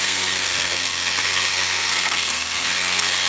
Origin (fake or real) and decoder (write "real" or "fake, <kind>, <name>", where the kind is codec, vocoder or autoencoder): fake, codec, SNAC